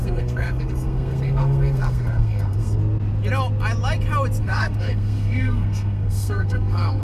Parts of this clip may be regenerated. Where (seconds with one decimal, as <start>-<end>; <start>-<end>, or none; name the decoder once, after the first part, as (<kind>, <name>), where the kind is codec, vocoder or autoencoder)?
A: 0.0-2.8 (codec, SNAC); 4.4-7.0